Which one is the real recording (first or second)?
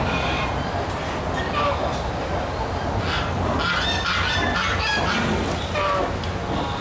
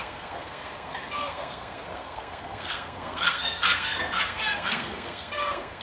first